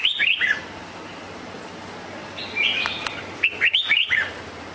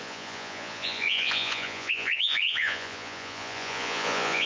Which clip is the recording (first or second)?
first